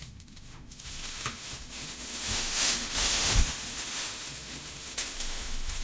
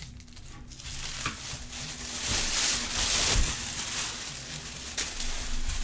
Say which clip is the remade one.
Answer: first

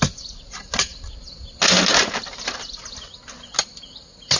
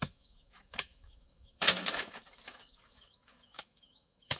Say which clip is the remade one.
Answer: second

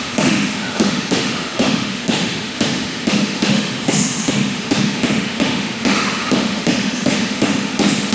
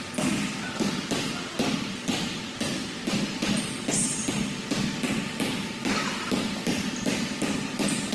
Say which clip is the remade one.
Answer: first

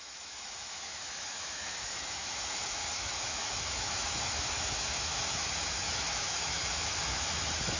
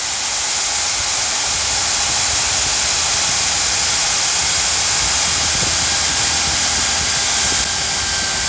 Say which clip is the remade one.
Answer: first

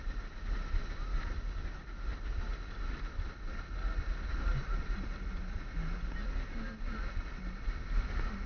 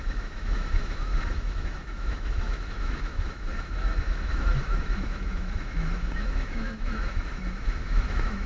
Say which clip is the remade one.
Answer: second